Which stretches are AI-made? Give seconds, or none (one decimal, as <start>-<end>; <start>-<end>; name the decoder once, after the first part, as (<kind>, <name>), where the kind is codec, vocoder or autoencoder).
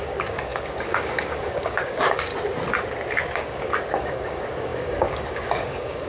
0.0-2.3 (codec, DAC); 3.1-6.1